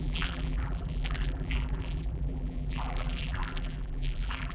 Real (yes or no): no